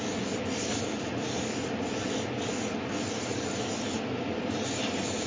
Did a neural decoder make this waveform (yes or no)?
no